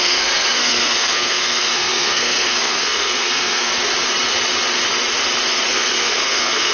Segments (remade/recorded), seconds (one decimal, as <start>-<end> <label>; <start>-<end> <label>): 0.0-3.7 remade; 3.7-5.7 recorded; 5.7-6.7 remade

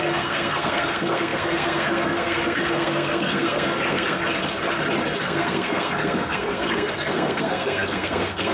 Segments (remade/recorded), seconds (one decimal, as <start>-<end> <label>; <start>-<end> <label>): 0.0-4.2 remade; 4.2-5.2 recorded; 5.2-8.5 remade

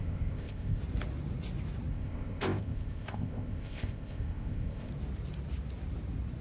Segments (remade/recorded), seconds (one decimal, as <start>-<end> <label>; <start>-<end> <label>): 0.0-0.8 remade; 0.8-1.9 recorded; 1.9-4.9 remade; 4.9-6.4 recorded

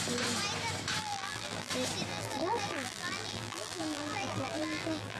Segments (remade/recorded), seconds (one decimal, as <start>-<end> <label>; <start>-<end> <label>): 0.0-1.0 recorded; 1.0-1.7 remade; 1.7-2.1 recorded; 2.1-5.2 remade

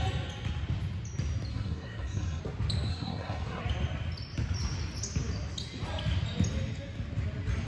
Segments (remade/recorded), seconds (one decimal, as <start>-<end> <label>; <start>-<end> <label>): 0.0-1.5 recorded; 1.5-2.4 remade; 2.4-2.9 recorded; 2.9-3.6 remade; 3.6-7.7 recorded

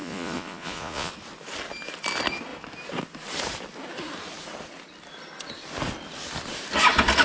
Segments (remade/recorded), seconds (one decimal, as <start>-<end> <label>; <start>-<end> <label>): 0.0-1.1 remade; 1.1-7.2 recorded

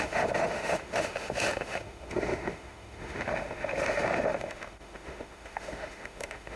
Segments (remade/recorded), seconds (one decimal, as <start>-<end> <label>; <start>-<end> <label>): 0.0-6.6 remade